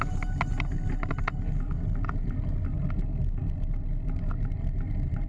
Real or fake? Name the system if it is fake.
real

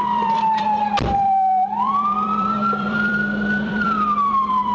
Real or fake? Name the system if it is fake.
fake, vocoder, BigVGAN v2